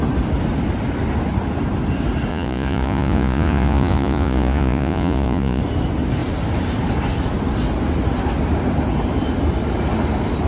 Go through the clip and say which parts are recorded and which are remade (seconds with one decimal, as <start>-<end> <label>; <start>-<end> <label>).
0.0-2.3 recorded; 2.3-5.6 remade; 5.6-10.5 recorded